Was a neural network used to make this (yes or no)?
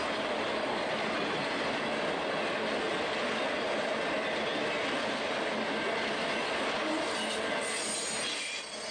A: no